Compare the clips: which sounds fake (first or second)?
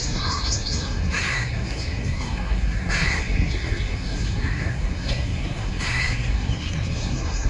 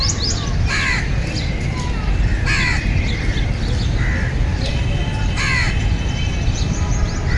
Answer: first